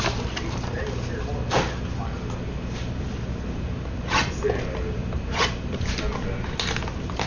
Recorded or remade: recorded